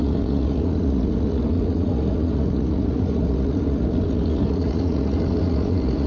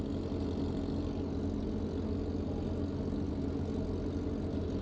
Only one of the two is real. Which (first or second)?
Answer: second